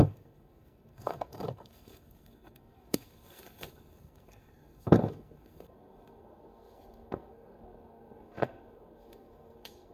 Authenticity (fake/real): fake